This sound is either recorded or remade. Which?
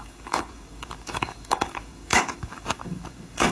remade